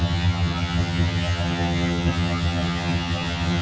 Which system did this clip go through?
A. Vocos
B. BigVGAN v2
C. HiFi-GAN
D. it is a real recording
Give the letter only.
C